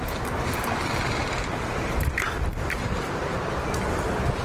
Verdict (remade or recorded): remade